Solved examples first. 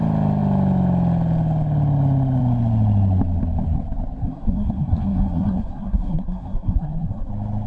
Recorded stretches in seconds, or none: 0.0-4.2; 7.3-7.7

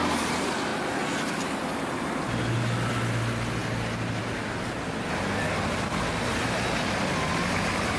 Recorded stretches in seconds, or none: 0.0-8.0

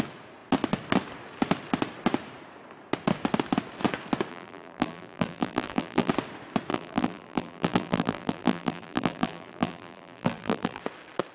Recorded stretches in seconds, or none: 0.0-4.3; 6.1-6.7; 10.8-11.3

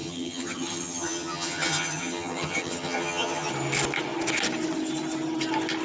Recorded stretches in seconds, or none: 3.5-5.8

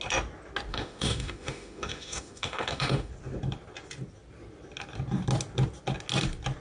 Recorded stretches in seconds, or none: 0.0-0.7; 3.1-6.6